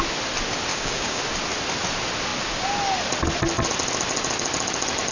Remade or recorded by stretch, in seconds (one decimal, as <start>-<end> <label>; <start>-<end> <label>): 0.0-0.7 recorded; 0.7-1.2 remade; 1.2-5.1 recorded